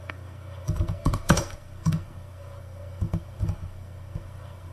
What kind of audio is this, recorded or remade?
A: remade